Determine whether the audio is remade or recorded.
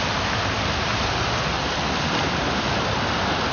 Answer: recorded